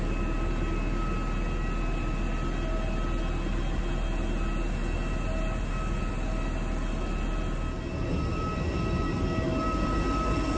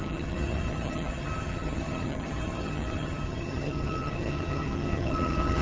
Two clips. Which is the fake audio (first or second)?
second